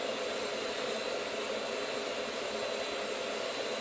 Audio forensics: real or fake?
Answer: real